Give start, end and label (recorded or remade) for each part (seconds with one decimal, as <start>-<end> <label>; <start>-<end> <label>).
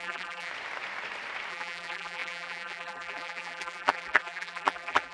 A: 0.0-0.5 remade; 0.5-1.5 recorded; 1.5-5.1 remade